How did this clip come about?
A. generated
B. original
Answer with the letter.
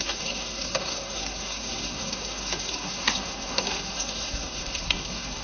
A